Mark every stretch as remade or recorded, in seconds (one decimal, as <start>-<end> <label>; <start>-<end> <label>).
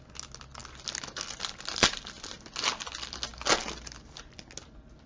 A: 0.0-5.1 recorded